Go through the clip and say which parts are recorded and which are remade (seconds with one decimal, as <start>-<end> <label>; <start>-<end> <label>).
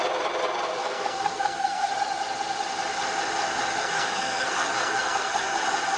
0.0-0.8 recorded; 0.8-1.9 remade; 1.9-3.8 recorded; 3.8-5.6 remade; 5.6-6.0 recorded